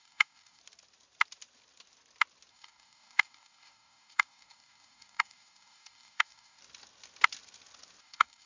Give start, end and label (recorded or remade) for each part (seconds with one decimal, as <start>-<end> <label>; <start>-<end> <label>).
0.0-0.6 remade; 0.6-2.5 recorded; 2.5-6.6 remade; 6.6-8.0 recorded; 8.0-8.5 remade